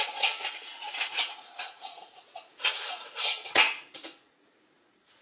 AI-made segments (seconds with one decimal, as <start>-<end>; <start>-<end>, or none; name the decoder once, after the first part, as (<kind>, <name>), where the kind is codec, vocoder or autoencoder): 0.0-5.2 (vocoder, Vocos)